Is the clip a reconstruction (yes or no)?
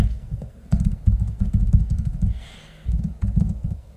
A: yes